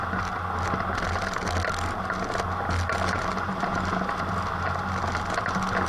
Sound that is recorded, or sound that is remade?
recorded